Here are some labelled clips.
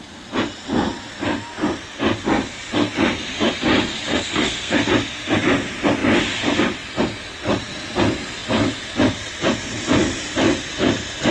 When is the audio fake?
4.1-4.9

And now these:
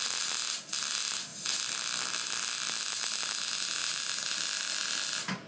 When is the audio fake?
none

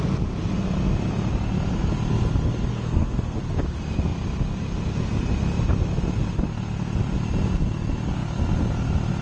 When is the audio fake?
2.7-3.4

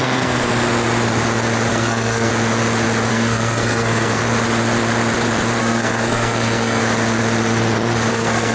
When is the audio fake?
0.0-0.5; 1.7-2.3; 3.1-4.2; 5.6-6.8; 8.1-8.5

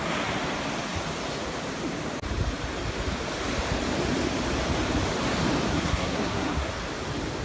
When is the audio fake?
5.7-6.7

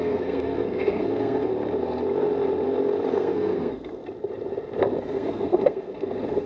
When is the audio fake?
0.0-1.5; 3.1-4.0; 5.0-6.5